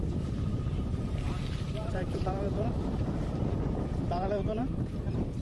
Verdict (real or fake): fake